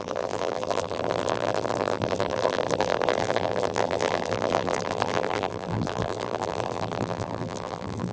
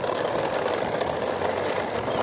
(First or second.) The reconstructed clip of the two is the first